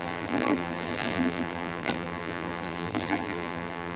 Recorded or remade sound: remade